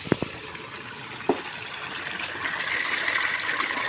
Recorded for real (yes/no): yes